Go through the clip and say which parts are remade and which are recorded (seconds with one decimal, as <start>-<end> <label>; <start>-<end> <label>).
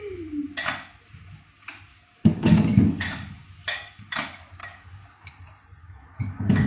0.0-1.9 recorded; 1.9-4.0 remade; 4.0-4.6 recorded; 4.6-5.3 remade; 5.3-5.8 recorded; 5.8-6.7 remade